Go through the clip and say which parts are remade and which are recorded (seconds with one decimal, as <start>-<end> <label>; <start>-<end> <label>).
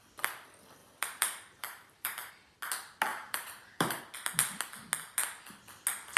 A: 0.0-0.8 recorded; 0.8-2.3 remade; 2.3-3.1 recorded; 3.1-4.0 remade; 4.0-6.2 recorded